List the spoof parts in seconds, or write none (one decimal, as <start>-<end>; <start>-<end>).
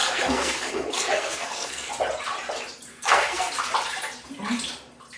0.0-1.9; 2.9-3.5